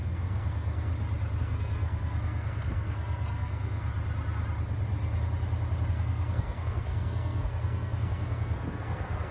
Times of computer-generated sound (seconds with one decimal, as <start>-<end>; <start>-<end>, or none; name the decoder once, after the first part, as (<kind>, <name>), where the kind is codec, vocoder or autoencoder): 0.0-0.9 (codec, SNAC); 1.4-3.9; 5.9-9.3